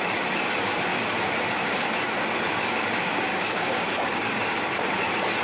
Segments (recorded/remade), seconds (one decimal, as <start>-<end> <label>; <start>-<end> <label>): 0.0-3.3 recorded; 3.3-4.8 remade; 4.8-5.4 recorded